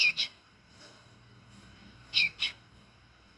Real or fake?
fake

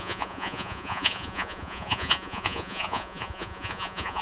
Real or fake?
fake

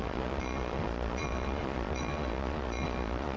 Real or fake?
fake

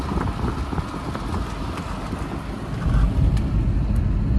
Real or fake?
real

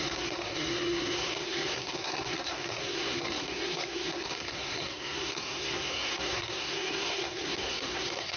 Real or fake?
fake